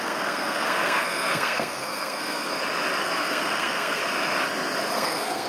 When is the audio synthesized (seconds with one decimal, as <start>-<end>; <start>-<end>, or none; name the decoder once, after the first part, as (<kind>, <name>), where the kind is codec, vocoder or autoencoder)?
0.0-2.5 (codec, SNAC); 3.0-4.0; 4.9-5.5